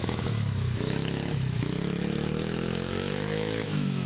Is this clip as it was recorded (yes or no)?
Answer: no